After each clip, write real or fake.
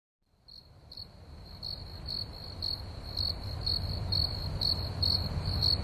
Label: real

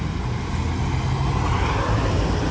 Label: real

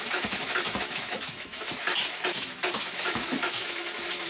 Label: fake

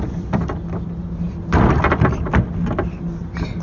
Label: real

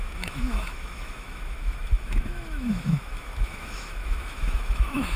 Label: fake